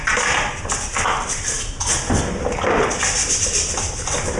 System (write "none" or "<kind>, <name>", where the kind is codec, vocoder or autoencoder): none